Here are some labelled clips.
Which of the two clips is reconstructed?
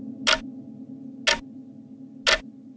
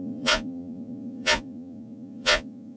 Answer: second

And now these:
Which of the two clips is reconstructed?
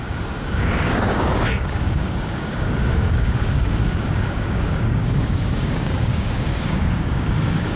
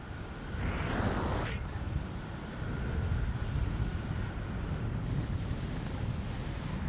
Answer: first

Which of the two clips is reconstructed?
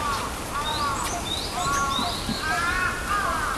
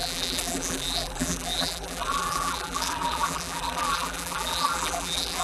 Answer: second